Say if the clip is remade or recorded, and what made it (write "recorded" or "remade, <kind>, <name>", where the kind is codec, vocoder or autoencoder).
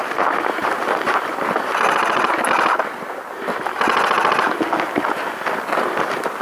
recorded